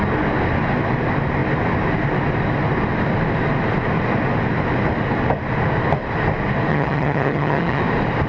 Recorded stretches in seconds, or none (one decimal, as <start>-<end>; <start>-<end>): 0.0-6.7; 7.8-8.3